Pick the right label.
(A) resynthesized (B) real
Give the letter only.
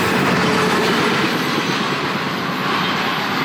B